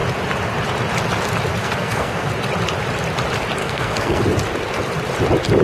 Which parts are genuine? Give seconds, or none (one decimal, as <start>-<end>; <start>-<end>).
0.0-1.6; 2.3-3.6; 4.2-5.6

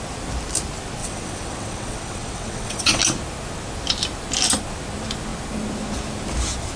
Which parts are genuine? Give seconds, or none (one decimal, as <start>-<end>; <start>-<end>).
0.0-1.0; 3.0-6.8

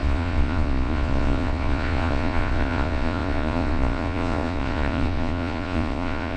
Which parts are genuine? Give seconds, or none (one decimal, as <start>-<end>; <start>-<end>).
none

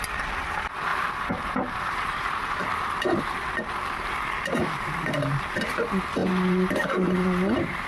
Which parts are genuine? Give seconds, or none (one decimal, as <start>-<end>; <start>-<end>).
0.0-0.9; 2.7-6.2

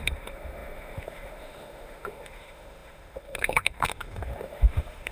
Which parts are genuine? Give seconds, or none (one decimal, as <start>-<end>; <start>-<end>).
none

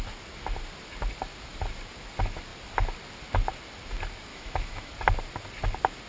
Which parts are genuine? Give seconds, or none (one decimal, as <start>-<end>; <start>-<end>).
0.0-4.3; 4.9-6.1